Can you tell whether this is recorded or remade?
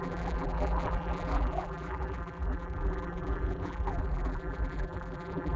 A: remade